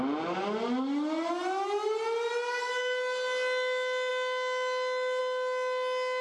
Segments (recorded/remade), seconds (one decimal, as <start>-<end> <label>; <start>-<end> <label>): 0.0-6.2 recorded